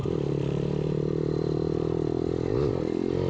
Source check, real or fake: real